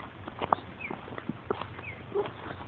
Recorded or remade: recorded